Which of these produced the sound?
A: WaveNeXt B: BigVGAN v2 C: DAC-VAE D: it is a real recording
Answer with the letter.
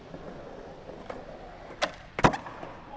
D